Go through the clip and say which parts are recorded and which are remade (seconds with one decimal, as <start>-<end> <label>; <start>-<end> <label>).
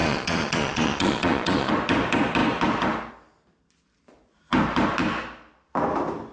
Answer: 0.0-1.7 remade; 1.7-6.3 recorded